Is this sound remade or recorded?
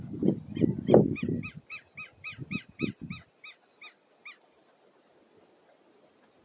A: recorded